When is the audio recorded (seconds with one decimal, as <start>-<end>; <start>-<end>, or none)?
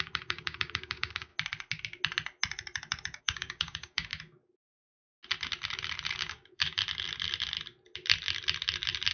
1.3-3.2; 4.1-6.2; 6.8-9.1